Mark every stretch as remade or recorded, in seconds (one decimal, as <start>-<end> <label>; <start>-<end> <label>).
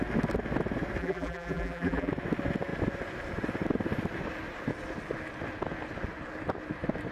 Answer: 0.0-1.0 recorded; 1.0-2.1 remade; 2.1-7.1 recorded